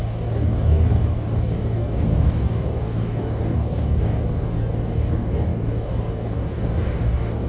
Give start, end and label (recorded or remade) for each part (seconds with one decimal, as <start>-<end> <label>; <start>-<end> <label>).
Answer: 0.0-7.5 remade